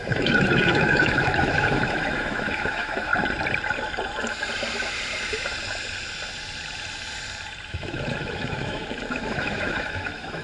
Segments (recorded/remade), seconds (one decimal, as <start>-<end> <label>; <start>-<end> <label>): 0.0-3.1 remade; 3.1-7.7 recorded; 7.7-10.4 remade